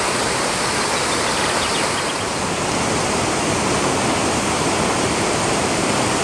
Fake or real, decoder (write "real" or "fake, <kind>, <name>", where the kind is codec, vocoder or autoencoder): real